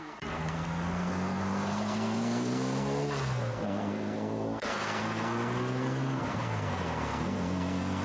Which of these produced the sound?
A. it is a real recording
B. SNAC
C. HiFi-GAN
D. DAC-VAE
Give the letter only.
B